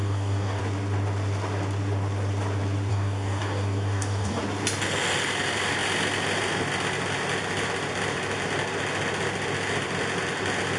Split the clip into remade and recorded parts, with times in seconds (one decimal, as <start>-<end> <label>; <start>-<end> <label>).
0.0-0.6 remade; 0.6-2.9 recorded; 2.9-4.4 remade; 4.4-10.8 recorded